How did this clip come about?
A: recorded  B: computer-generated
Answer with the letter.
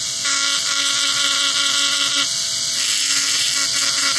A